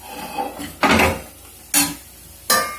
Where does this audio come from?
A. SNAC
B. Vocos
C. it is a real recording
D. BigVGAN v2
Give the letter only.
C